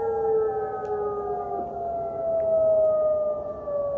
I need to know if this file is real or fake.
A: real